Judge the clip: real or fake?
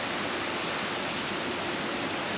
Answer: real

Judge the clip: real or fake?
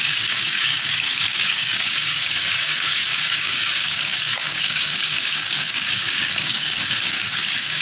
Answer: fake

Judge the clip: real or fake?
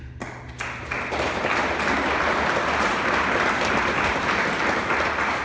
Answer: real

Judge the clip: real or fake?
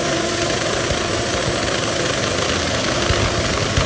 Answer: real